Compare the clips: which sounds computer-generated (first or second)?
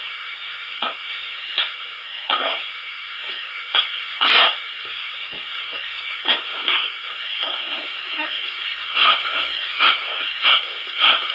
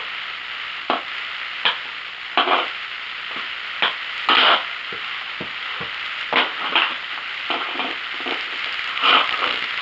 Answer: first